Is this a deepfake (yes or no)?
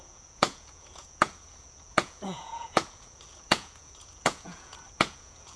yes